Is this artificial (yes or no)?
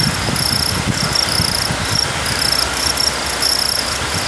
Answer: no